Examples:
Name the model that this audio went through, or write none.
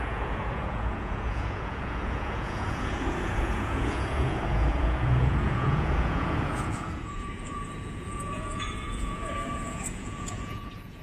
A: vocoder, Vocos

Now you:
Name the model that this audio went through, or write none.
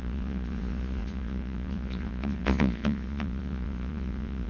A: vocoder, Vocos